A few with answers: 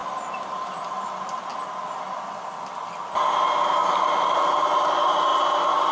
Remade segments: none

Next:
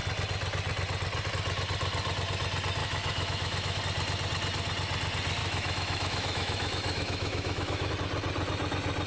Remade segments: 2.8-3.8 (autoencoder, DAC-VAE); 5.4-7.9

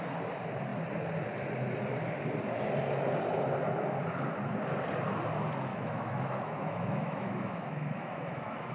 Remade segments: 5.7-8.7 (autoencoder, DAC-VAE)

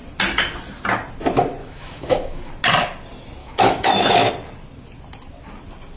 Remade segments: 1.6-2.5 (autoencoder, DAC-VAE); 3.4-4.3

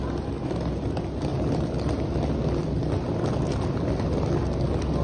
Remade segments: none

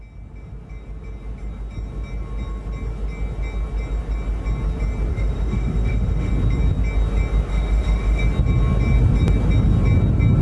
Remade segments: 5.1-6.3 (autoencoder, DAC-VAE); 7.5-8.2